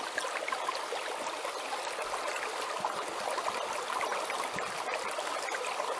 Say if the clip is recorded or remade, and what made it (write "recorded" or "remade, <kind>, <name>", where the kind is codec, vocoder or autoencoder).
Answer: recorded